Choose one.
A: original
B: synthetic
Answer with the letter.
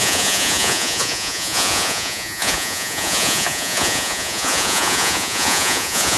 B